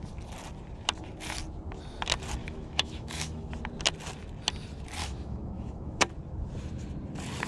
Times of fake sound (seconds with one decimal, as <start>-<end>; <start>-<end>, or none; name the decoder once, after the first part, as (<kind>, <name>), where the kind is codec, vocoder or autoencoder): 2.4-3.5 (autoencoder, DAC-VAE); 5.0-6.0